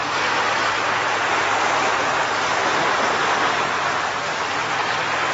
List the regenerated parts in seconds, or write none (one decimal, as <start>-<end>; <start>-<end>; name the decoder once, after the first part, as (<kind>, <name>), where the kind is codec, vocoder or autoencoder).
1.2-3.3 (vocoder, BigVGAN v2); 4.3-5.3

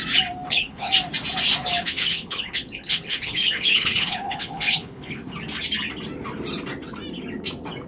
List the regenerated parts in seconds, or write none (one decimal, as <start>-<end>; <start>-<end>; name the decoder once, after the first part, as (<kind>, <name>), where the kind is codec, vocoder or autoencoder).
0.5-0.9 (codec, HILCodec); 1.8-5.2

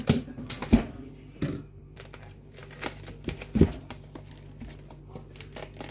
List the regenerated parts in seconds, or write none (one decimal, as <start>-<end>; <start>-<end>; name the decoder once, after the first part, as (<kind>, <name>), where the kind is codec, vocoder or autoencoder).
none